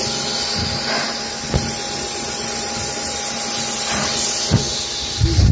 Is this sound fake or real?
real